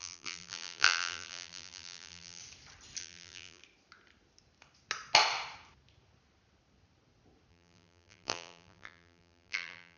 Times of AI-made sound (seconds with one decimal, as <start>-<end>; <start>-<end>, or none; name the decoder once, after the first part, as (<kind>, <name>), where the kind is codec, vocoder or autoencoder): 0.0-2.4 (vocoder, BigVGAN v2); 3.0-3.6; 7.5-10.0

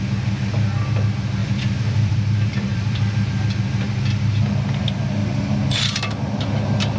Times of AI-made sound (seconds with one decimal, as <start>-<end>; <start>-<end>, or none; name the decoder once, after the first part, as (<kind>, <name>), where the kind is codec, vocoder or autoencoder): 1.4-3.3 (vocoder, BigVGAN v2)

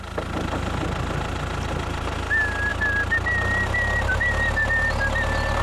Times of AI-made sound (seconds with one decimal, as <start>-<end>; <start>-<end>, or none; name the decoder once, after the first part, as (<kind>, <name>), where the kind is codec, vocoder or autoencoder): none

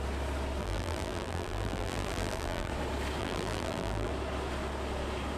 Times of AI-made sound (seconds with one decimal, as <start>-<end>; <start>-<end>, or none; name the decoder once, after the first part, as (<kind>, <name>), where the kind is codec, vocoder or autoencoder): 0.6-2.7 (vocoder, BigVGAN v2); 3.2-4.1

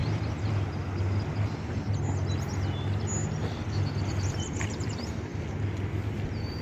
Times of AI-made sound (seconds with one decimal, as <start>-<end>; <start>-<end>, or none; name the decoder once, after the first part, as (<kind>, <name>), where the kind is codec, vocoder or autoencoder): 4.0-5.3 (vocoder, BigVGAN v2)